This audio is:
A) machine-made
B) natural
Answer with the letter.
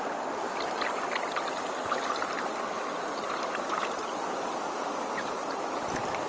B